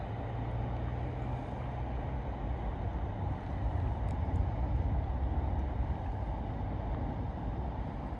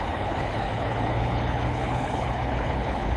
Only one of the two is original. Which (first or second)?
first